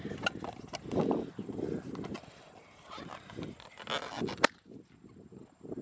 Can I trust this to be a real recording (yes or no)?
yes